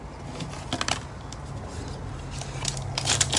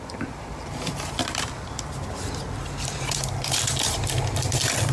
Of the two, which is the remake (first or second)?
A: second